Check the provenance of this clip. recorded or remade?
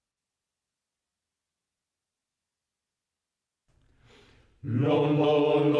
recorded